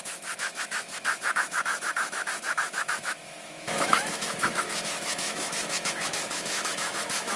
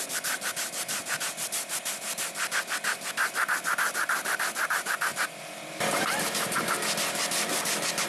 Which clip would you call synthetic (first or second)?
first